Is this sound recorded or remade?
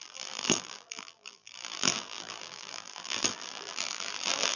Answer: remade